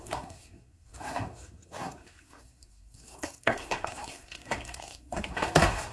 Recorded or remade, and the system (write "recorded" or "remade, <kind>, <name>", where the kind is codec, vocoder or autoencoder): remade, codec, SNAC